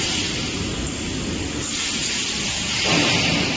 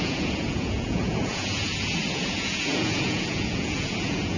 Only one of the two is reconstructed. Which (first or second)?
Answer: second